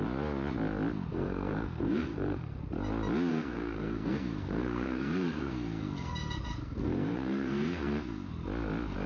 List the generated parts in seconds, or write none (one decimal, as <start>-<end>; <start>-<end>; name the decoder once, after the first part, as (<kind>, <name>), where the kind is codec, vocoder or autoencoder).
1.1-2.6 (codec, SNAC); 3.3-8.3